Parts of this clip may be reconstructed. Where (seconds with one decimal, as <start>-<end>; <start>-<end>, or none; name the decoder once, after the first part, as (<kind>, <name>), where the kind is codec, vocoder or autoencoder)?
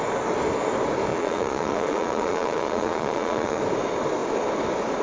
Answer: 1.1-3.6 (vocoder, Vocos)